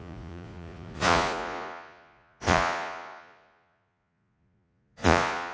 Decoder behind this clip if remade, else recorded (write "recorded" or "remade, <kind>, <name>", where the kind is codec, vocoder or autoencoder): remade, vocoder, Vocos